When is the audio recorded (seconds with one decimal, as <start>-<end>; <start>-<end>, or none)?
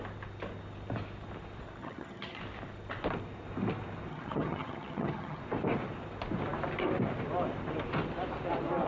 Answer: 0.0-1.8; 2.4-4.1; 5.4-8.9